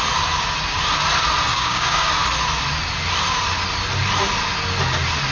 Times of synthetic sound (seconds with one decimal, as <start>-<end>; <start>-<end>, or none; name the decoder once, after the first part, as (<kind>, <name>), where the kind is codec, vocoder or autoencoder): 1.5-2.1 (codec, DAC)